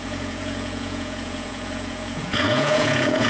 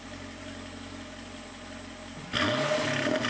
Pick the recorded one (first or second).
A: second